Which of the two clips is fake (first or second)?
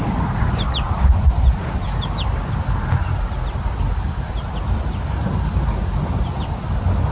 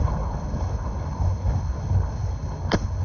second